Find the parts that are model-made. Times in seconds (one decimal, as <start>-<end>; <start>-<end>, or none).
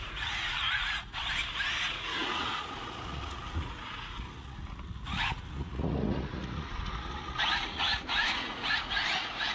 0.0-1.2; 1.8-9.5